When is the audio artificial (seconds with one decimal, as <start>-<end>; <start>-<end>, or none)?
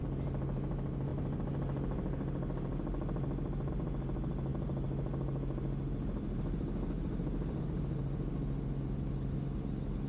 none